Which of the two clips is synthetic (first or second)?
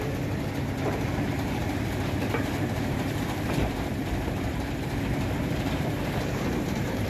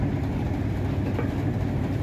first